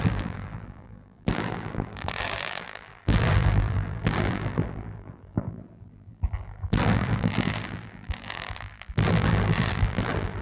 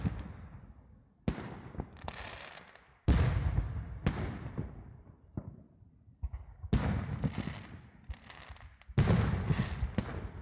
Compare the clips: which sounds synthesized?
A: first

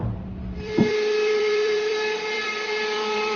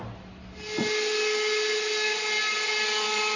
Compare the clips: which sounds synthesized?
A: first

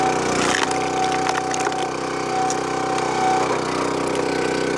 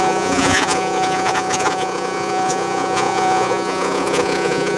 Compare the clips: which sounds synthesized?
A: second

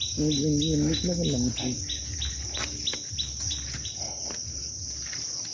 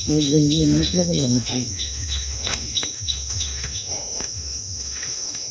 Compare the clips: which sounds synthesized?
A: second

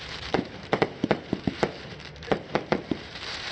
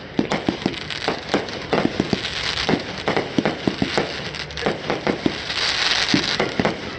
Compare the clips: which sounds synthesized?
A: first